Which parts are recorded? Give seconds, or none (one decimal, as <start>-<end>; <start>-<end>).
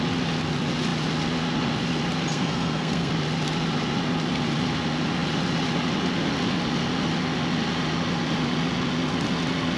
0.0-2.3; 3.1-9.8